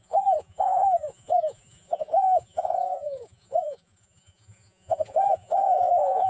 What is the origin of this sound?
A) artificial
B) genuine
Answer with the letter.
A